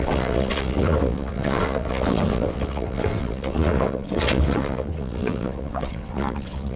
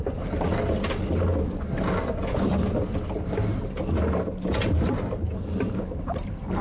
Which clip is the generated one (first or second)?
first